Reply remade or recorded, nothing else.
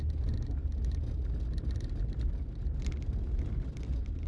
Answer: recorded